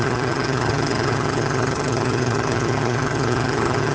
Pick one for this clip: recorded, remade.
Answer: remade